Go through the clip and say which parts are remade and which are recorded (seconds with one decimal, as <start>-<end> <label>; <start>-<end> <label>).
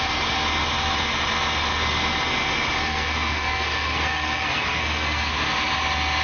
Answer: 0.0-2.8 recorded; 2.8-5.3 remade; 5.3-6.2 recorded